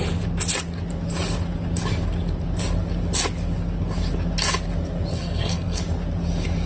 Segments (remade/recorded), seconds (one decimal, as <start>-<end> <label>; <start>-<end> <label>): 0.0-5.1 recorded; 5.1-5.8 remade; 5.8-6.7 recorded